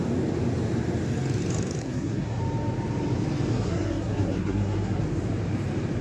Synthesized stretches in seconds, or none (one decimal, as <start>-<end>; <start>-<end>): 1.8-2.4; 3.5-5.0